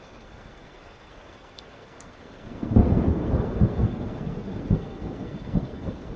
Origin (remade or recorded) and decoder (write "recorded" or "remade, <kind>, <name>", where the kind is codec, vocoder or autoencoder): remade, codec, SNAC